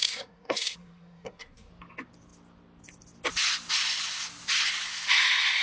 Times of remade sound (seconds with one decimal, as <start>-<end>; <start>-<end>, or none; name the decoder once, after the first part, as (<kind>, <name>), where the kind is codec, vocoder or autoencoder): 0.0-1.7 (codec, SNAC)